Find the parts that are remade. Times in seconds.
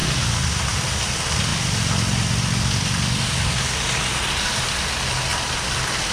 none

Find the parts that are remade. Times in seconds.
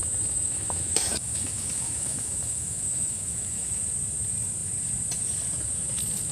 0.0-3.8 (autoencoder, DAC-VAE)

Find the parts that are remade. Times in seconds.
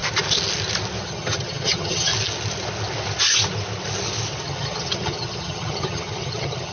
1.0-2.1 (vocoder, HiFi-GAN); 4.4-6.7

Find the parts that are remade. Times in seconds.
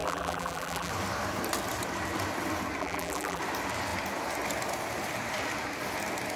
0.0-0.9 (vocoder, BigVGAN v2); 2.8-3.4